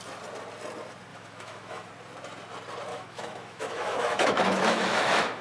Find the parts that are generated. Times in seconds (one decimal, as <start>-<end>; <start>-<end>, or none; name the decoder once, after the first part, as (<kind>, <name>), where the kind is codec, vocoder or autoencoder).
1.1-1.9 (autoencoder, DAC-VAE); 2.9-5.4